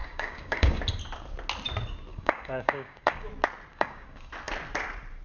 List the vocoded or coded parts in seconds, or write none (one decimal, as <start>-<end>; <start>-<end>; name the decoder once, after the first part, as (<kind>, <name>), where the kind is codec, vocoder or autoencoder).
0.0-0.8 (codec, DAC); 2.1-3.3; 3.7-4.3